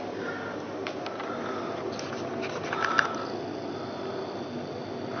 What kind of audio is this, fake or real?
real